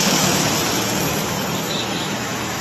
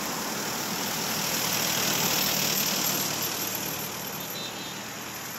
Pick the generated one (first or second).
first